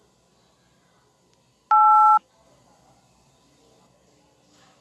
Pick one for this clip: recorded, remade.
recorded